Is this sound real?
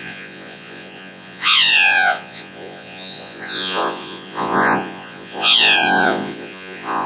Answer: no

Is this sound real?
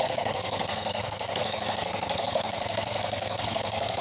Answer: no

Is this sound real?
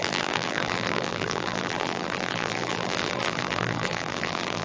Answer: no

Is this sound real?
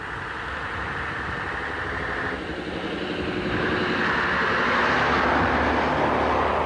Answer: yes